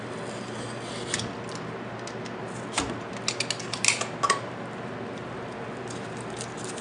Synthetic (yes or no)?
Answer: no